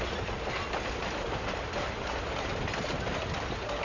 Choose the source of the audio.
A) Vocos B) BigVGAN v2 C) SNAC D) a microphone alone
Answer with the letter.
D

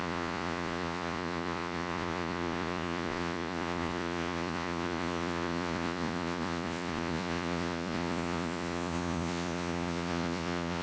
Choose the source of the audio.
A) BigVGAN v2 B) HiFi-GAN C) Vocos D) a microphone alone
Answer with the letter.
C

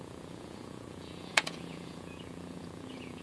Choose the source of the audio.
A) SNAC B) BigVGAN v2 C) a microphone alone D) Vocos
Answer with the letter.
D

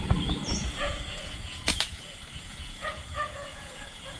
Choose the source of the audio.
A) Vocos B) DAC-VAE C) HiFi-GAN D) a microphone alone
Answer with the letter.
A